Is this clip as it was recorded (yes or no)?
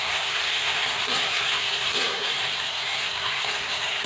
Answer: no